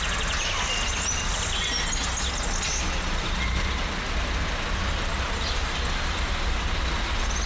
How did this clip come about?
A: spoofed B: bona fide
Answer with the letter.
B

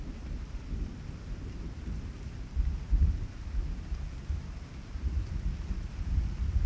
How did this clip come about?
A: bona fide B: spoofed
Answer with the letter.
A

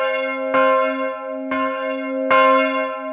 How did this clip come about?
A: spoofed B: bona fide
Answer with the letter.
B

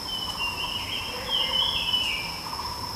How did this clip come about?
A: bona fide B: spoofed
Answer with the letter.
A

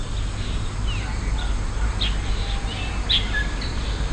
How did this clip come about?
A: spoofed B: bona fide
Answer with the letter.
B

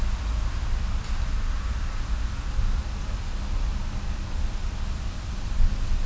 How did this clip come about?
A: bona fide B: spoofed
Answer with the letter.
A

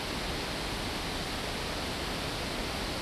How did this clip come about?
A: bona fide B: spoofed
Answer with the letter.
A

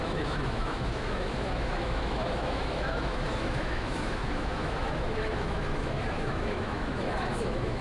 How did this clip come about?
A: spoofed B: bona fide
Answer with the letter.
A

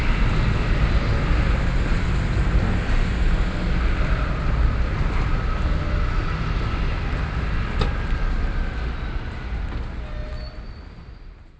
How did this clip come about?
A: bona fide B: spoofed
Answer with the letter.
A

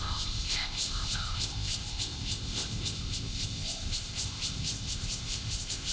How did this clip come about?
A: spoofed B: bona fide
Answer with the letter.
A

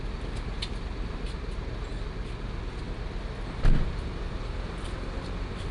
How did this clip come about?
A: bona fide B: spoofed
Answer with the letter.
A